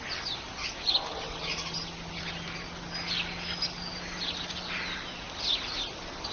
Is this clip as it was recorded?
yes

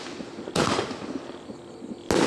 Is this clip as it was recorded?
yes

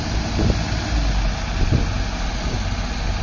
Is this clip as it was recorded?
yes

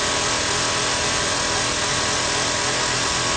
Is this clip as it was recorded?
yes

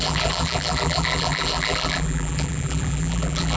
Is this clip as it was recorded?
no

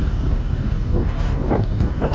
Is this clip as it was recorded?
no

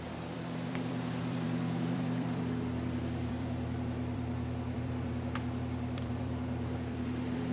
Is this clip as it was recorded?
no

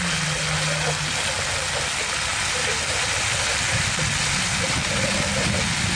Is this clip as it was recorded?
yes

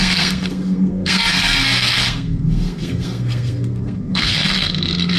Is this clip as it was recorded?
no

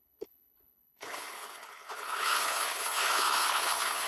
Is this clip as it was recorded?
no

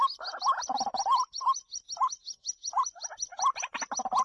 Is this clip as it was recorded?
yes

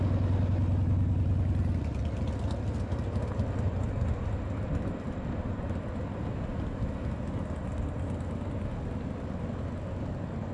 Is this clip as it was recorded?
yes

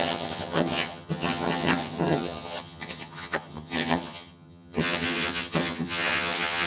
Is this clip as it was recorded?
no